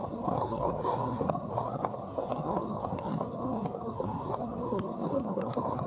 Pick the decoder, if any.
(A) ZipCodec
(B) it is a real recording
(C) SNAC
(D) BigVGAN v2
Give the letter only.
C